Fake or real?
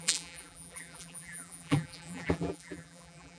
fake